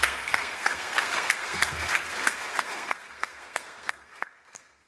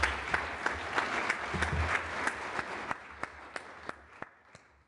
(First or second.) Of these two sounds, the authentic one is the second